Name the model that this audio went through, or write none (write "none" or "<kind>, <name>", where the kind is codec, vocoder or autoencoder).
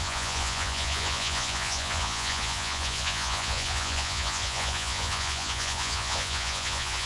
vocoder, Vocos